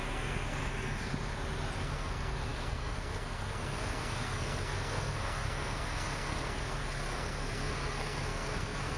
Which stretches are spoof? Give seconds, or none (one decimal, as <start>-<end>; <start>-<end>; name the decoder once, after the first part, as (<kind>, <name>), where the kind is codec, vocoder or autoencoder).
0.0-1.1 (codec, SNAC); 1.8-9.0